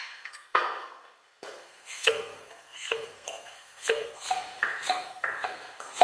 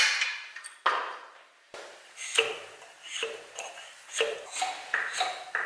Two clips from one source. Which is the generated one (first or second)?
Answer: first